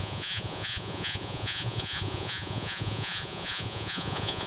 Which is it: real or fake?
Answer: fake